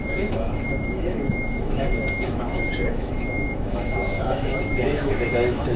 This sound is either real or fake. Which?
fake